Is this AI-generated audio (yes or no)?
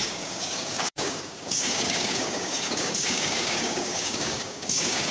yes